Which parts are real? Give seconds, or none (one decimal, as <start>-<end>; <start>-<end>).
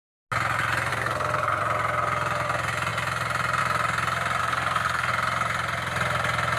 0.0-0.9; 1.6-4.4; 5.1-6.6